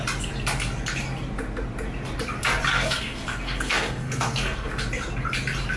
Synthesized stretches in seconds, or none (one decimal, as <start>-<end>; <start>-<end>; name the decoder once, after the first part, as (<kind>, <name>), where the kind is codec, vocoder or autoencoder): 2.7-4.7 (codec, SNAC)